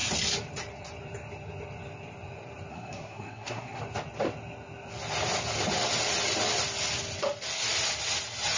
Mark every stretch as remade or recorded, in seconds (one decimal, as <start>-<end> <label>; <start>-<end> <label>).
0.0-2.7 recorded; 2.7-3.8 remade; 3.8-8.6 recorded